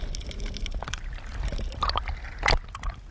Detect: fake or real real